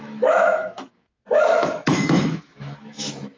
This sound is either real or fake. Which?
fake